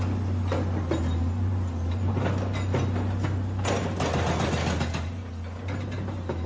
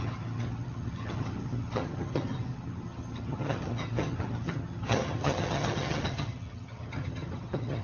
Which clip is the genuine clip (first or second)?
first